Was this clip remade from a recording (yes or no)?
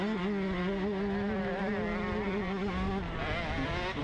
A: no